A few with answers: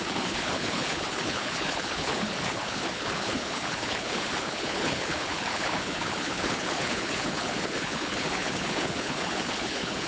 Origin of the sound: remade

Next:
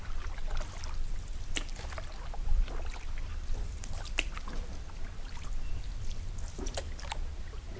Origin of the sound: recorded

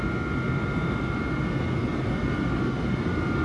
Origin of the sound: recorded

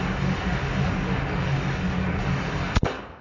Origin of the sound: remade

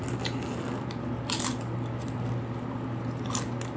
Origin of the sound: recorded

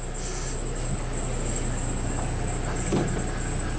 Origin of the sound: recorded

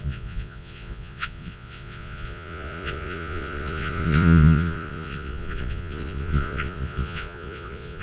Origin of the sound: remade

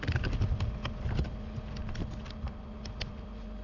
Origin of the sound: recorded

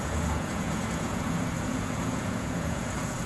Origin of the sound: remade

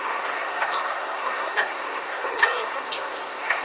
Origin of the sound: remade